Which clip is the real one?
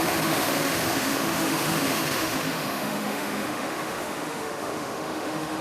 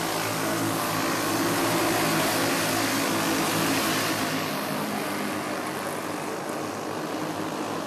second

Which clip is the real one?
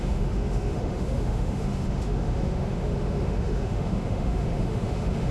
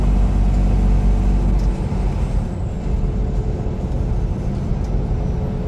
second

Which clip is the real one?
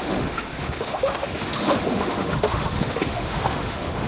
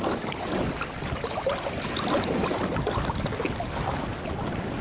second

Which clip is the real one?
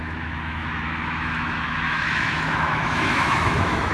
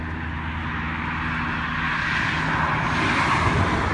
second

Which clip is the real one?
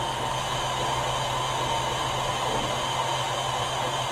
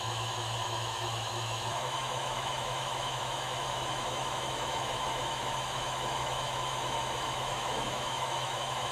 first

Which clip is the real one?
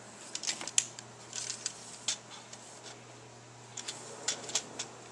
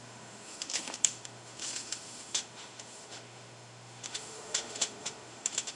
first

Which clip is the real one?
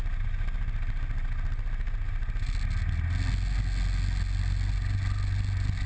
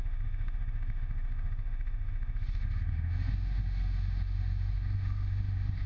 first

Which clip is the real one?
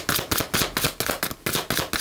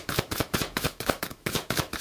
first